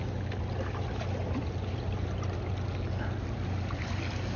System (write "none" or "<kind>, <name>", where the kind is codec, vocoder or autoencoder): none